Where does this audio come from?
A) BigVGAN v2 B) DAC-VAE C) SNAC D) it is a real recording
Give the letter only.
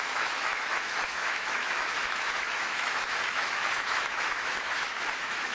B